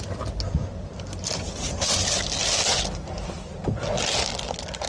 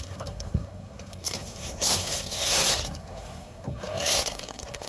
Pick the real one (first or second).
first